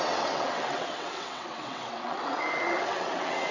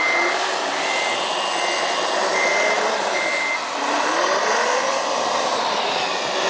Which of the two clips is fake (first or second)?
first